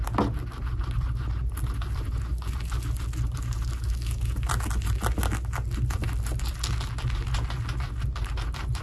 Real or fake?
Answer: real